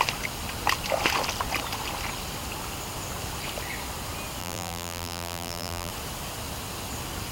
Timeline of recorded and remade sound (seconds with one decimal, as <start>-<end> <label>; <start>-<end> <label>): 0.0-4.4 recorded; 4.4-5.9 remade; 5.9-7.3 recorded